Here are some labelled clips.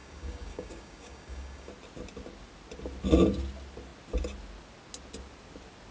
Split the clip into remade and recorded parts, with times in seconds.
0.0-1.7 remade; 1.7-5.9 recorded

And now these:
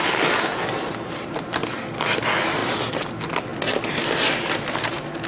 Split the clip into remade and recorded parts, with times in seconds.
0.0-5.3 recorded